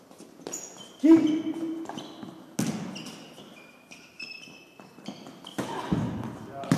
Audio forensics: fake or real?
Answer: real